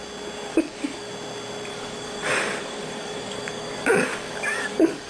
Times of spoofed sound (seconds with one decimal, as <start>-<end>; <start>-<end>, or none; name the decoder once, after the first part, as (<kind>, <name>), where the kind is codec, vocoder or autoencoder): 0.5-1.1 (codec, DAC); 1.7-5.1